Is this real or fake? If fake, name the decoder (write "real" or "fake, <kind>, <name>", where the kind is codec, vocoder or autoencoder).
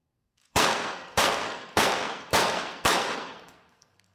fake, codec, SNAC